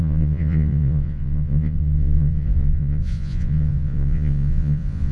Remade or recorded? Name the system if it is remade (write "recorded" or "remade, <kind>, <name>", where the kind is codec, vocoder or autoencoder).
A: remade, vocoder, Vocos